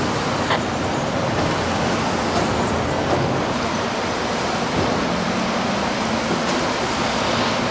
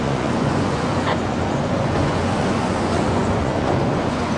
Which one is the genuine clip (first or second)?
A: first